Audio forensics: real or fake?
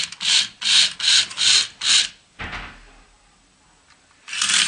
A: real